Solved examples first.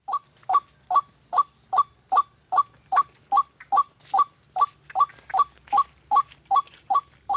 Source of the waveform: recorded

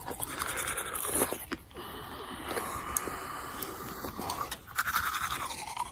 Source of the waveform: recorded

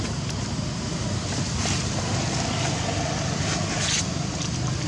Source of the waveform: recorded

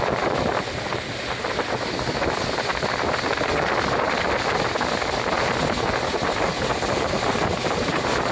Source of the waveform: recorded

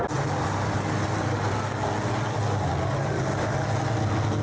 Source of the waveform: recorded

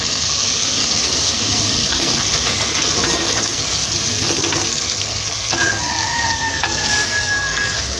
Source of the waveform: remade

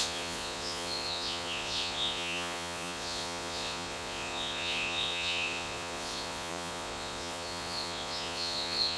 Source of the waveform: remade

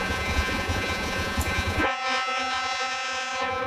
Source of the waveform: remade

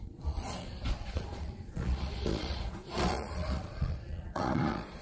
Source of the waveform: remade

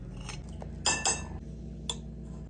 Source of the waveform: recorded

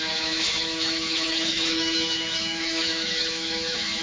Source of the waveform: remade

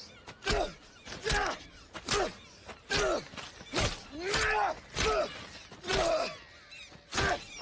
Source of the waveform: recorded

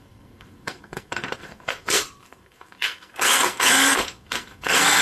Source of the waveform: remade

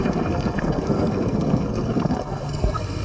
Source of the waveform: remade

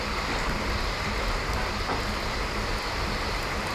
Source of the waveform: recorded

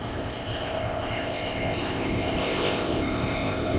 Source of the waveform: remade